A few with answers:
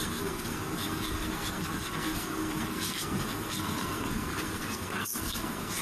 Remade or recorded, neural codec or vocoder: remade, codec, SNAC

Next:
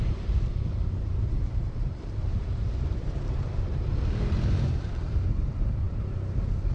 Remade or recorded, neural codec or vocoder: remade, vocoder, BigVGAN v2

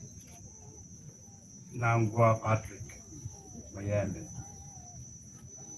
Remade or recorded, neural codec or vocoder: recorded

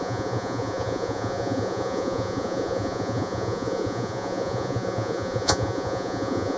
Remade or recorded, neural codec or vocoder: remade, vocoder, Vocos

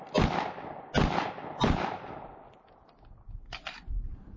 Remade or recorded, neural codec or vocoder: recorded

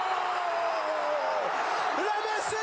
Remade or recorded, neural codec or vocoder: recorded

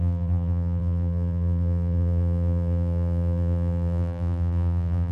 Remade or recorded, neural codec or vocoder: remade, vocoder, BigVGAN v2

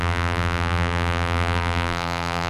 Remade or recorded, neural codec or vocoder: remade, vocoder, BigVGAN v2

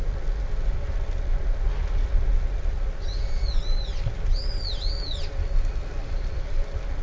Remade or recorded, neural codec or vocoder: recorded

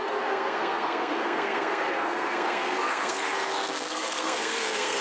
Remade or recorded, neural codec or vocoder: remade, codec, SNAC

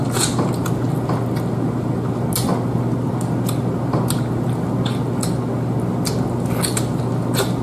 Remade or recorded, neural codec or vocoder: recorded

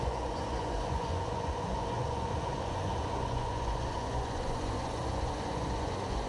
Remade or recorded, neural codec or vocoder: remade, vocoder, Vocos